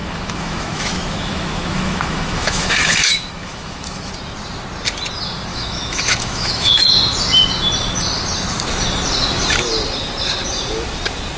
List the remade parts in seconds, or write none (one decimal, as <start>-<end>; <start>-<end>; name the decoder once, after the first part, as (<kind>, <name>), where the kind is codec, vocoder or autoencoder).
0.0-4.1 (autoencoder, DAC-VAE); 5.5-6.9